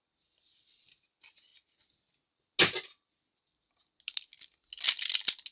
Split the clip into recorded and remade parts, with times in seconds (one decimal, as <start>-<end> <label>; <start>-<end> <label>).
0.0-5.5 recorded